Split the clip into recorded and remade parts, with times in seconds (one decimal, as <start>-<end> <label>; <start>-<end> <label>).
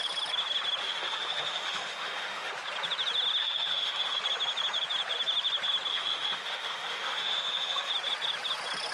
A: 0.0-0.8 recorded; 0.8-2.5 remade; 2.5-3.4 recorded; 3.4-4.2 remade; 4.2-5.9 recorded; 5.9-7.9 remade; 7.9-8.9 recorded